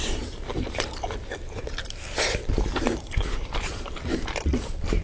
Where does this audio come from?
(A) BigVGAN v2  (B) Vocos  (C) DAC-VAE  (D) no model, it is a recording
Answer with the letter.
A